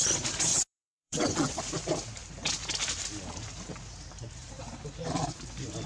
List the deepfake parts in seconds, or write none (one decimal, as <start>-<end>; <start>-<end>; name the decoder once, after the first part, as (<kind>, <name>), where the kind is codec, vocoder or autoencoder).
0.5-1.6 (vocoder, WaveNeXt)